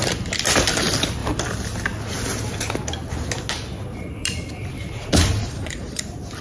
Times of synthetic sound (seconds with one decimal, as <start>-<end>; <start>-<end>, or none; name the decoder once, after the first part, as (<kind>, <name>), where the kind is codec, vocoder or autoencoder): 5.4-6.0 (vocoder, Vocos)